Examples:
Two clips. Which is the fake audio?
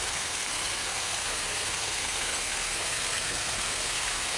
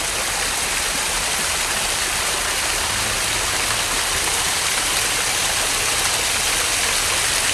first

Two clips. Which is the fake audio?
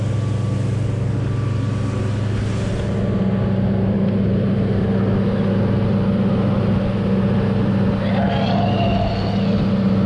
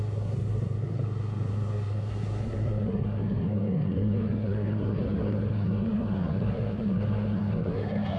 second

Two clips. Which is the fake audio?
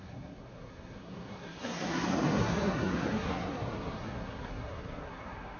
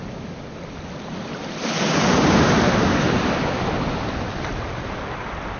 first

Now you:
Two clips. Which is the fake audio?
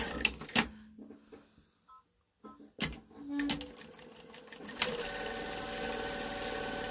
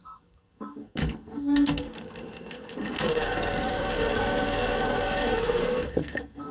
second